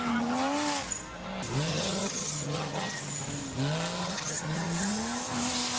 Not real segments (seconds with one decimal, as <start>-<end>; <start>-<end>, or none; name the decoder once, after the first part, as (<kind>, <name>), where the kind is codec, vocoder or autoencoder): 1.7-3.2 (vocoder, HiFi-GAN); 4.0-4.9